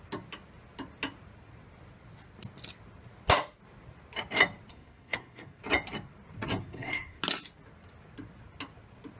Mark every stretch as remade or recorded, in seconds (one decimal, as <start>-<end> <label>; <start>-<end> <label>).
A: 0.0-4.7 recorded; 4.7-5.6 remade; 5.6-6.6 recorded; 6.6-7.2 remade; 7.2-9.2 recorded